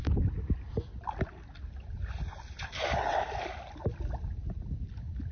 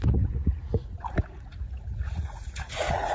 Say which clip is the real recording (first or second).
first